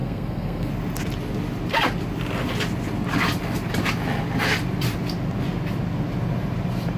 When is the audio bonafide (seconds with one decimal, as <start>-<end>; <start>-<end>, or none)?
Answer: 0.7-7.0